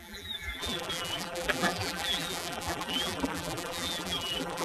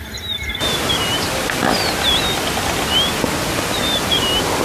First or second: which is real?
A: second